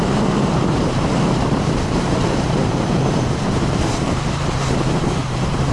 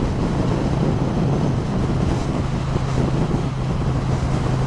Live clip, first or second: second